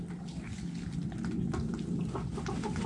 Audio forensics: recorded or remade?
recorded